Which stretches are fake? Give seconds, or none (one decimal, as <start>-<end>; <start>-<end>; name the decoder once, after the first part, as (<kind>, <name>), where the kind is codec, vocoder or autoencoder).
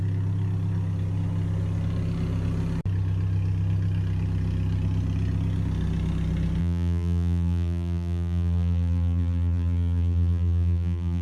6.6-11.2 (vocoder, BigVGAN v2)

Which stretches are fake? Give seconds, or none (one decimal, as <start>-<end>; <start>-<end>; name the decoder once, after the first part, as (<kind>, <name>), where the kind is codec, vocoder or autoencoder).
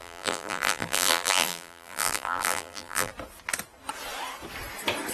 0.0-3.1 (vocoder, BigVGAN v2)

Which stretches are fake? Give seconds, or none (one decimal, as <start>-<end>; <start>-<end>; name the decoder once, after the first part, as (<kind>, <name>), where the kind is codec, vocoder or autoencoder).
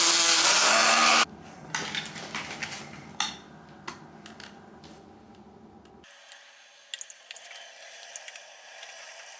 none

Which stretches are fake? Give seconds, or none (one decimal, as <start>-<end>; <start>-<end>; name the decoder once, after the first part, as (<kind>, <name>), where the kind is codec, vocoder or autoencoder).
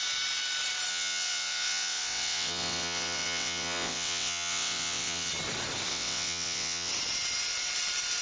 0.9-5.3 (vocoder, WaveNeXt); 5.9-6.9